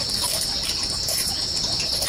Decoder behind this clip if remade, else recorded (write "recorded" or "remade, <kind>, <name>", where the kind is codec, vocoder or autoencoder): recorded